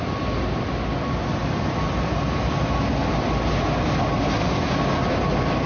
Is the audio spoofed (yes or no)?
no